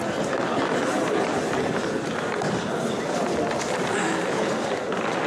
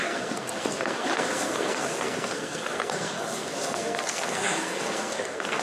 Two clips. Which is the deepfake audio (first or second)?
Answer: second